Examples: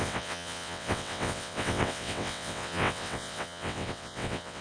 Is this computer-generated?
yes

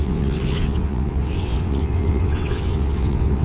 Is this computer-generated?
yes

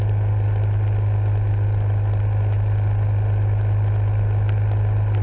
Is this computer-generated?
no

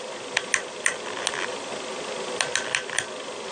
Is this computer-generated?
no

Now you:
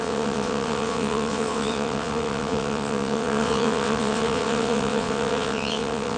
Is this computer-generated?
yes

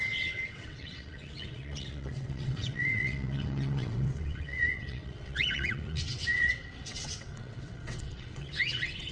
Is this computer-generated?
yes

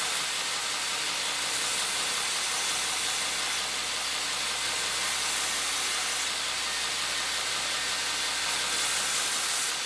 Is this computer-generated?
no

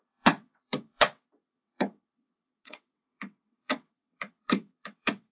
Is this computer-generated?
yes